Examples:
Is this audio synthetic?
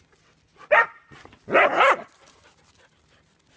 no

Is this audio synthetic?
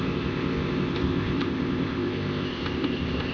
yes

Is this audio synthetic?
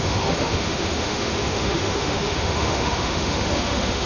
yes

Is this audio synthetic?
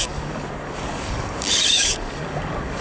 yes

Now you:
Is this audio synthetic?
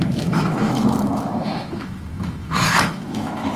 yes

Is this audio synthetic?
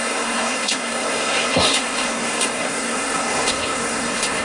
yes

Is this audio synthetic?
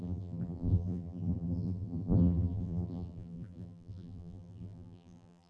yes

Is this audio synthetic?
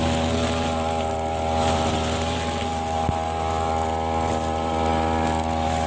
no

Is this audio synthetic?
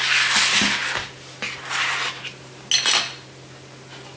no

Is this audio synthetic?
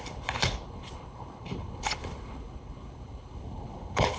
yes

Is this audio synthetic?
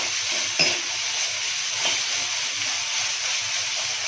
no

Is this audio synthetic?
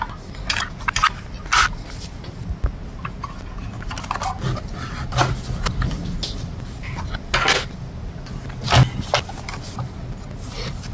no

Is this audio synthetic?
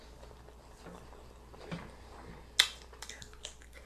no